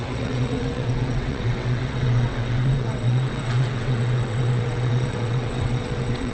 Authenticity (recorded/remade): remade